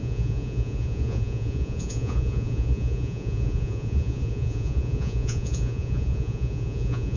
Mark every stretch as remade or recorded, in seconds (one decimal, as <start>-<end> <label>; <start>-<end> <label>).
0.0-7.2 remade